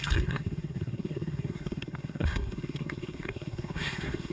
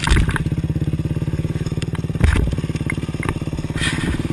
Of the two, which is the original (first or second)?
second